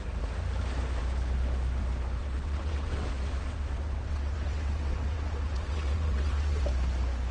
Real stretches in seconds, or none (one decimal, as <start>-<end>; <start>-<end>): 0.0-2.2; 6.6-7.3